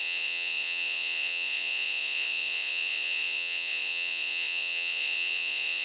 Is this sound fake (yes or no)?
yes